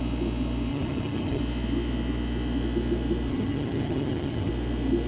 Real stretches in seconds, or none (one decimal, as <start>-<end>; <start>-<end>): 0.0-0.7; 1.4-3.3; 4.5-5.1